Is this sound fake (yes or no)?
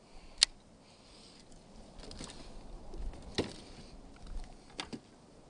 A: no